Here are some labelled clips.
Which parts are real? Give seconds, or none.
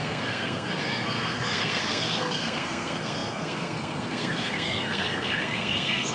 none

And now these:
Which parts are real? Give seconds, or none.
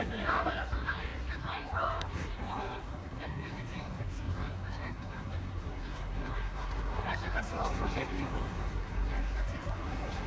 none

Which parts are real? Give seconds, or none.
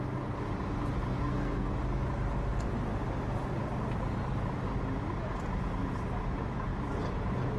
0.0-1.2; 1.8-7.6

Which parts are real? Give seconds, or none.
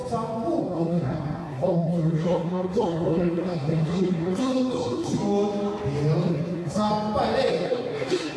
0.0-0.6; 5.2-6.3; 6.9-7.5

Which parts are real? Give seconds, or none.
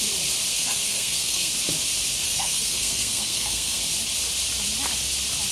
0.0-0.5; 1.5-2.2; 3.8-5.5